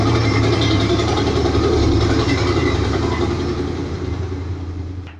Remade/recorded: remade